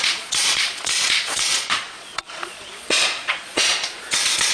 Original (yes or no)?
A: no